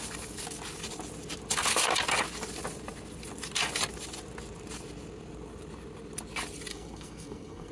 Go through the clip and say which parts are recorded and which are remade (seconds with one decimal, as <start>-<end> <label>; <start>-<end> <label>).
0.0-6.7 recorded; 6.7-7.7 remade